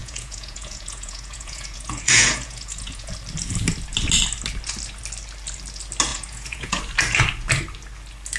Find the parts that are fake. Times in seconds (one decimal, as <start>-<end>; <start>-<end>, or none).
0.0-3.1; 6.1-6.8